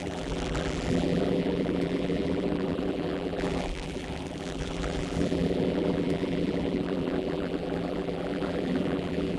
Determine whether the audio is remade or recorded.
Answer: remade